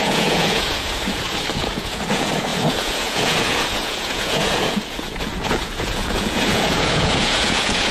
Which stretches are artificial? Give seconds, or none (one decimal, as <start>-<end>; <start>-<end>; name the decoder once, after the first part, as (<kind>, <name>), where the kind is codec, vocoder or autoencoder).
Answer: 0.0-7.9 (vocoder, Vocos)